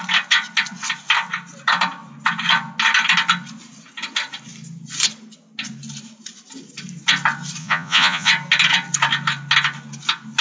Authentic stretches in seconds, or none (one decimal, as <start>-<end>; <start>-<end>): 0.0-7.6; 8.3-10.4